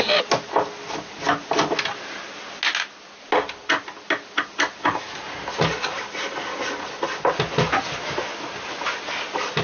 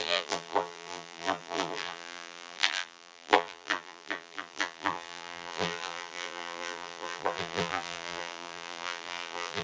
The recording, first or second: first